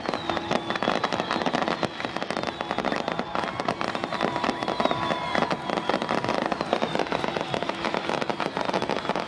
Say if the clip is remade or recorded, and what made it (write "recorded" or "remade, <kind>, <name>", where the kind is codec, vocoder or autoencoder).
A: recorded